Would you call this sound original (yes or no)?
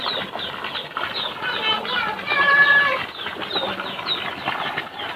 yes